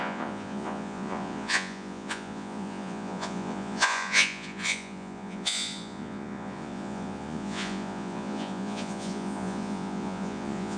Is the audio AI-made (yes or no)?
yes